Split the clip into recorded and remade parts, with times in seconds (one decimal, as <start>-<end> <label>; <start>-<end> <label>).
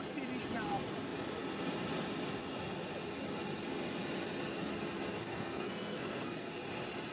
0.0-5.2 recorded; 5.2-6.5 remade; 6.5-7.1 recorded